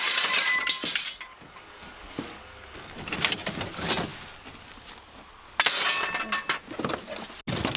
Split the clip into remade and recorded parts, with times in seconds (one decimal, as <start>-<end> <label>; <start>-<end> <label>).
0.0-1.3 recorded; 1.3-2.9 remade; 2.9-7.8 recorded